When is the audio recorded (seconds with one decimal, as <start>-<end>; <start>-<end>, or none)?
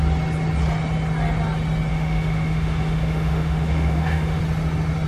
0.0-1.9; 4.4-5.1